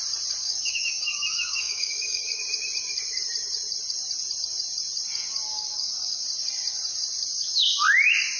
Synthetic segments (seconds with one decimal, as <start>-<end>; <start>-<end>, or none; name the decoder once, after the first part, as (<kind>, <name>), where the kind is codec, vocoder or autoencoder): 0.4-2.4 (codec, DAC); 5.5-6.2